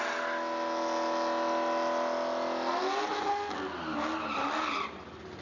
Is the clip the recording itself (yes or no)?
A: yes